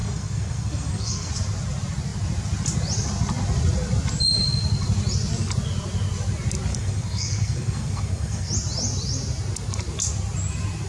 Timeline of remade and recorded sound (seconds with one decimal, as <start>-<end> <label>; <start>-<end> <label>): 0.0-1.3 remade; 1.3-6.7 recorded; 6.7-8.5 remade; 8.5-10.9 recorded